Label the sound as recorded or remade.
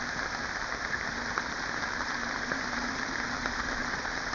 recorded